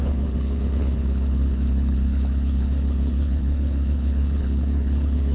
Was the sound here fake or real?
fake